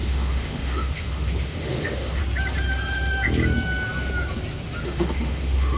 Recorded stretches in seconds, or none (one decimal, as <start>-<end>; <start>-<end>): 2.2-4.8